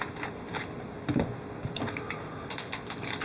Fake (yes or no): no